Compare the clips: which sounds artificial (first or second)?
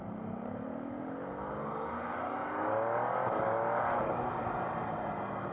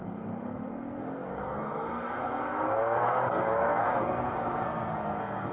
second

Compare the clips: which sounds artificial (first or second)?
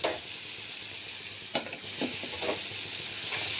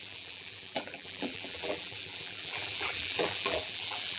second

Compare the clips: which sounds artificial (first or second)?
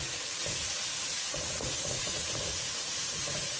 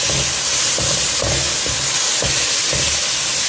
first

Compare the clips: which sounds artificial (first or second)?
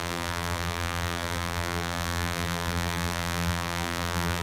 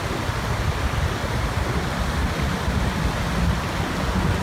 first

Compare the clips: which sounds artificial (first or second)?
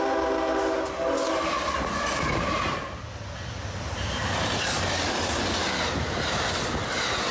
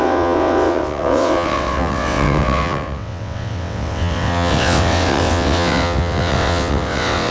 second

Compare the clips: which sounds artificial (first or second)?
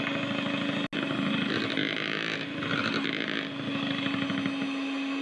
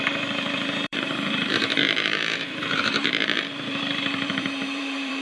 second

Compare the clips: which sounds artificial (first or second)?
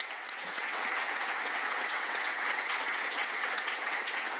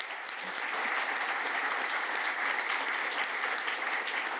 first